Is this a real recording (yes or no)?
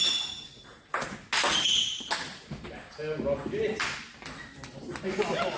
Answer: yes